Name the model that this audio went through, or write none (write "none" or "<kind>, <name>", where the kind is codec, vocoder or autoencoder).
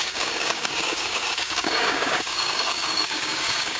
codec, DAC